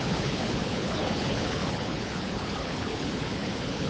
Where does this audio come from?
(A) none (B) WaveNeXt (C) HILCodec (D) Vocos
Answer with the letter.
C